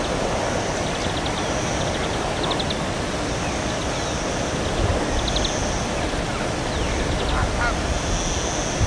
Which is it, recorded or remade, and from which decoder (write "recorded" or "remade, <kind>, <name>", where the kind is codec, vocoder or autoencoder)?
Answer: recorded